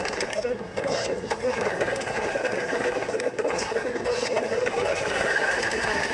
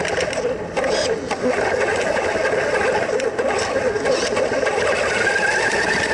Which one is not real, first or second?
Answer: first